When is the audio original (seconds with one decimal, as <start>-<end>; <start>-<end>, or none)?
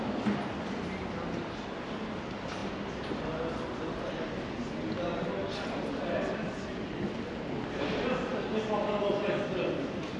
0.0-10.2